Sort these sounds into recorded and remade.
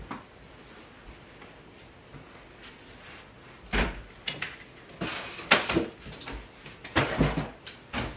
recorded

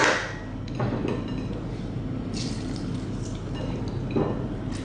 recorded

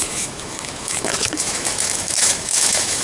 remade